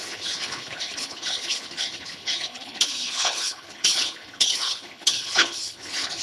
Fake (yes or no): yes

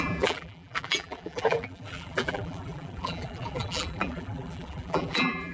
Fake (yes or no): yes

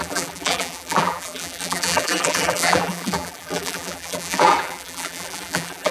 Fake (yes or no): yes